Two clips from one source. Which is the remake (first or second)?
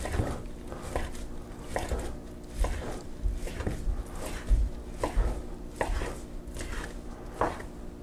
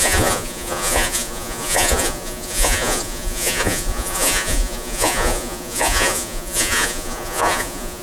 second